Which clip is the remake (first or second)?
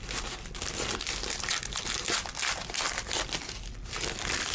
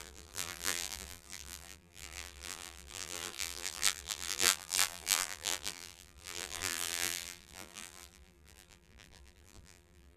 second